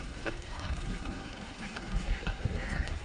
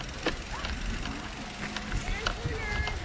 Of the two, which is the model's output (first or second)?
first